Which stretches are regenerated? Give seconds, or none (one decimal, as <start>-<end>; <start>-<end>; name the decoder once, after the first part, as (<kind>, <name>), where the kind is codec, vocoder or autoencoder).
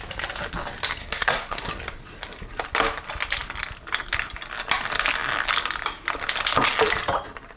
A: 1.0-1.7 (codec, SNAC)